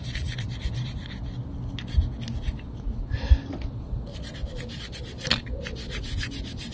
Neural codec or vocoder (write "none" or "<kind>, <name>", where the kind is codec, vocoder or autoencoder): none